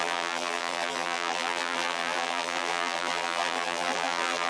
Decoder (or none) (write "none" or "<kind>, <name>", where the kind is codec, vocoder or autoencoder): vocoder, BigVGAN v2